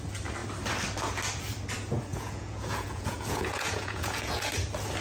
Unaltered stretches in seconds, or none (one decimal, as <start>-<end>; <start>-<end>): 0.0-2.1; 4.5-5.0